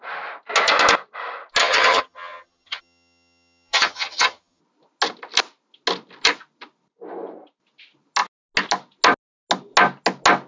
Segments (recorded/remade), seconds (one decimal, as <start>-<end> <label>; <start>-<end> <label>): 0.0-1.6 recorded; 1.6-4.6 remade; 4.6-10.5 recorded